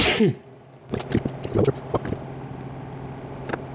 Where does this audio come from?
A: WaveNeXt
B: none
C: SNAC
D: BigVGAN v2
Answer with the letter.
B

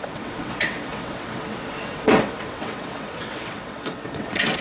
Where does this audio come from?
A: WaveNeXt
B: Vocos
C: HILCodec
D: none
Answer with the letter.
A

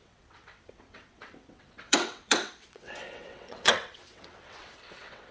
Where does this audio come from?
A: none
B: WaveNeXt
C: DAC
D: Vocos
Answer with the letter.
B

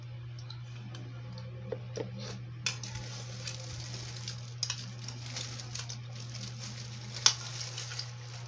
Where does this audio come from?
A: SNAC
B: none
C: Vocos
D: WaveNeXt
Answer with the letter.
B